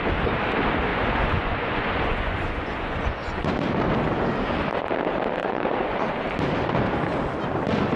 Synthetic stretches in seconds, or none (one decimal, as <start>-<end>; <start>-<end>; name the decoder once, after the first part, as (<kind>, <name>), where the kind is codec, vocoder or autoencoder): 0.9-3.4 (vocoder, Vocos); 5.4-6.0